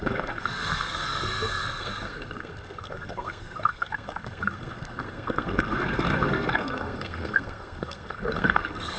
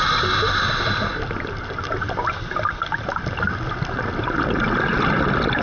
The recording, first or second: second